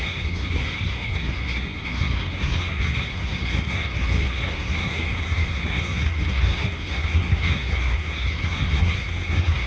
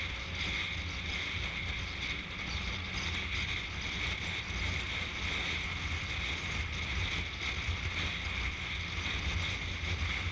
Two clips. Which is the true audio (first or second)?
second